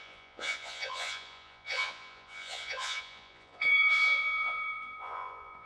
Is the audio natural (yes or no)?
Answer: no